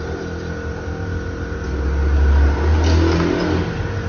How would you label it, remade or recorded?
recorded